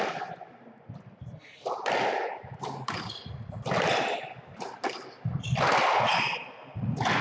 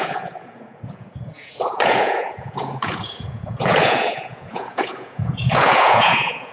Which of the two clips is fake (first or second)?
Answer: second